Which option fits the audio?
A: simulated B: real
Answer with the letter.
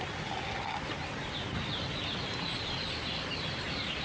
B